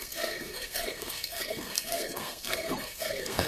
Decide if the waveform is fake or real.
fake